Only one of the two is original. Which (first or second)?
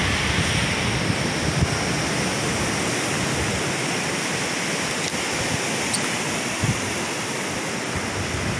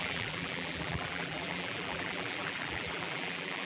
first